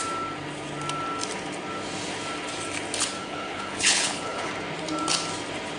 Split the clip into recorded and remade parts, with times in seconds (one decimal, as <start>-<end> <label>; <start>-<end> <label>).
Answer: 0.0-3.2 recorded; 3.2-4.5 remade; 4.5-5.8 recorded